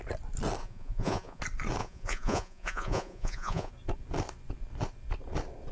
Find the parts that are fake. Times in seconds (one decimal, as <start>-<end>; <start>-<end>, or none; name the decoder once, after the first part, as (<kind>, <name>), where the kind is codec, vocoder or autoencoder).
0.6-1.4 (vocoder, Vocos); 1.8-3.7